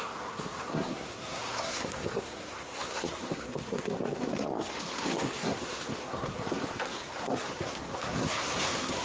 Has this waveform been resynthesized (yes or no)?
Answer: yes